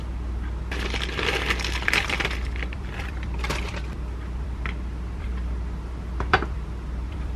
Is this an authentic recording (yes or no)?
no